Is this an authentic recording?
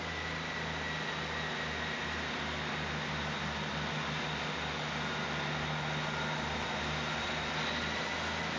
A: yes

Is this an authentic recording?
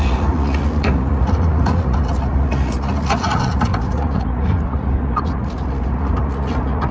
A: no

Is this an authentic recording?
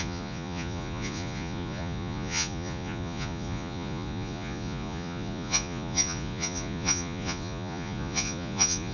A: no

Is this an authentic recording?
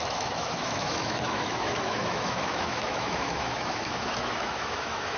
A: no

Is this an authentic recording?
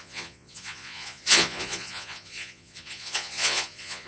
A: no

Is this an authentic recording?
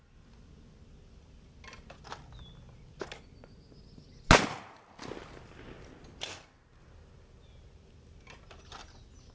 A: yes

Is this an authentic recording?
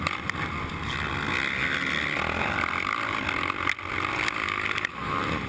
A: yes